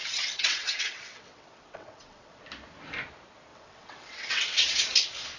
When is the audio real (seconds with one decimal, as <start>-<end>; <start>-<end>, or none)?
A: 2.4-3.5; 4.8-5.4